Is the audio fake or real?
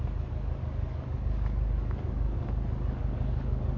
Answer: fake